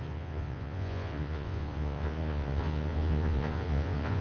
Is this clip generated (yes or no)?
yes